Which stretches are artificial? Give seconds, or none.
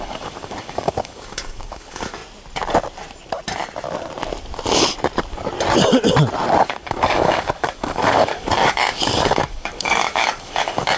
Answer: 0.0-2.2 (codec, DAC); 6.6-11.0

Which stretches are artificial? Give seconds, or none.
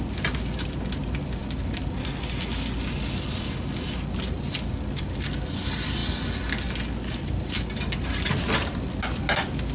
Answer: none